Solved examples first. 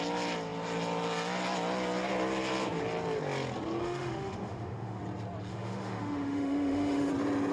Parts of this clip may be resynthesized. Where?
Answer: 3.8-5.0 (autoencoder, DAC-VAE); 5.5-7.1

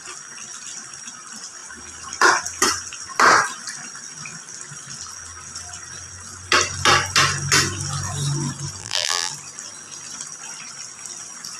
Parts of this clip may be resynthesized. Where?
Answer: 8.8-9.3 (vocoder, BigVGAN v2)

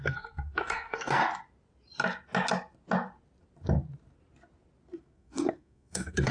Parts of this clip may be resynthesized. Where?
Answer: 0.0-1.2 (codec, SNAC); 5.0-6.3